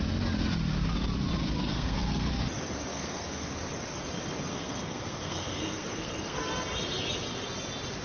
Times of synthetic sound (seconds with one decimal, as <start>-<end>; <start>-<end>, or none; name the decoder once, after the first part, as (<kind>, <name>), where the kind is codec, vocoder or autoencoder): 1.6-2.3 (codec, SNAC); 2.9-3.5; 4.5-6.4